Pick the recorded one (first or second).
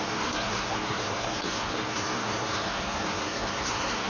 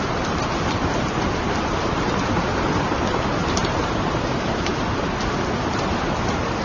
second